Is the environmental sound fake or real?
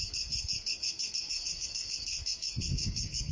fake